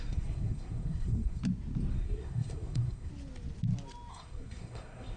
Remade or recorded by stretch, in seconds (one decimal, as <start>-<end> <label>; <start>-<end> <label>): 0.0-1.4 remade; 1.4-1.9 recorded; 1.9-3.1 remade; 3.1-4.1 recorded; 4.1-5.2 remade